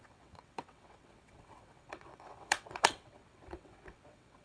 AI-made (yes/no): yes